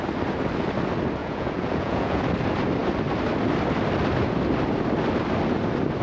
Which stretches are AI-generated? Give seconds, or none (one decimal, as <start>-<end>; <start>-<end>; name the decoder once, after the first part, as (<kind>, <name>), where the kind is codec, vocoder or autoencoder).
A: 1.2-2.2 (vocoder, Vocos)